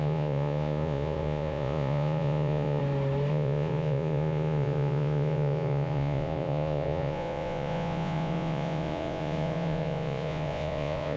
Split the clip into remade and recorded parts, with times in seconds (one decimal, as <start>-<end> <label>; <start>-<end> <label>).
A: 0.0-2.8 remade; 2.8-3.3 recorded; 3.3-11.2 remade